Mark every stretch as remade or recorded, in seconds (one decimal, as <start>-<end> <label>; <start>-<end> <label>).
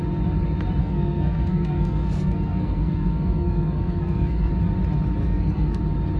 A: 0.0-0.8 recorded; 0.8-4.5 remade; 4.5-5.2 recorded; 5.2-5.8 remade; 5.8-6.2 recorded